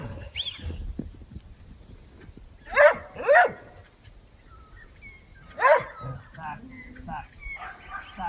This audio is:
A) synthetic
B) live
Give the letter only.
B